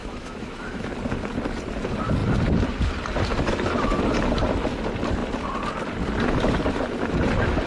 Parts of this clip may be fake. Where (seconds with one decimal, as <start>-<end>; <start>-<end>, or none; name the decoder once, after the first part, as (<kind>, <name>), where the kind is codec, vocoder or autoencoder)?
0.0-0.9 (autoencoder, DAC-VAE)